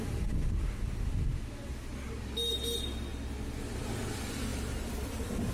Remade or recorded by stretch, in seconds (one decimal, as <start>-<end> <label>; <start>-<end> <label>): 0.0-4.5 recorded; 4.5-5.5 remade